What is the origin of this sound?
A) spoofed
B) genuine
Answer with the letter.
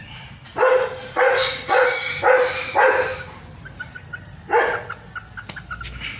B